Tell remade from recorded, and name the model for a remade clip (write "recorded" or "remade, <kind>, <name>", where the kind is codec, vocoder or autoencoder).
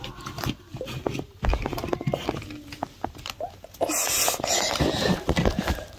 recorded